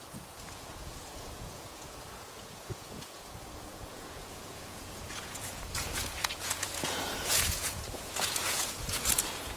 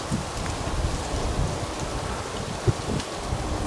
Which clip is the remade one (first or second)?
first